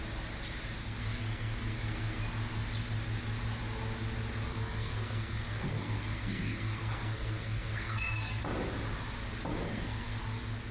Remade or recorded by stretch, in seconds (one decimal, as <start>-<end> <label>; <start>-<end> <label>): 0.0-0.8 recorded; 0.8-2.2 remade; 2.2-4.5 recorded; 4.5-8.4 remade; 8.4-9.5 recorded; 9.5-10.2 remade; 10.2-10.7 recorded

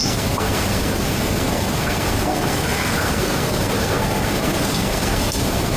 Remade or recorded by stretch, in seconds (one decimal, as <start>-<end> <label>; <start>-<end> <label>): 0.0-5.8 remade

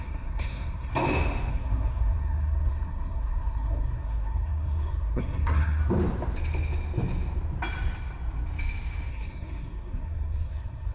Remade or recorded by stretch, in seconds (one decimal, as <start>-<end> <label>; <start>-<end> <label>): 0.0-0.9 remade; 0.9-1.5 recorded; 1.5-5.8 remade; 5.8-9.1 recorded; 9.1-10.9 remade

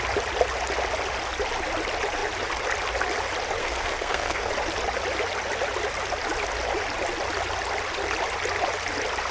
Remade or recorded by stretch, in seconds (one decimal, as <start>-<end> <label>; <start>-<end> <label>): 0.0-3.6 recorded; 3.6-4.5 remade; 4.5-9.3 recorded

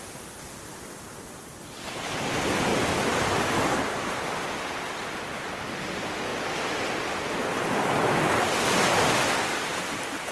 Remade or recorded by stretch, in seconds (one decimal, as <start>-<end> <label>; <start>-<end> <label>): 0.0-10.3 recorded